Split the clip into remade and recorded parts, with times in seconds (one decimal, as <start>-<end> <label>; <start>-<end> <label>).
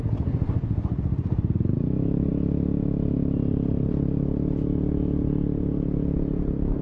0.0-6.8 recorded